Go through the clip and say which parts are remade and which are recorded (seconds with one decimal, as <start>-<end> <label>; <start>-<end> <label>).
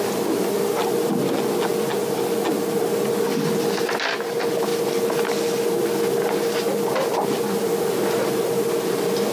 0.0-9.3 recorded